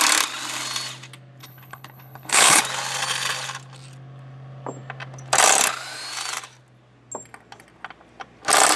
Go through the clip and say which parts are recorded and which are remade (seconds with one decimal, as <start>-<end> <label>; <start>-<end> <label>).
0.0-1.4 recorded; 1.4-2.6 remade; 2.6-8.8 recorded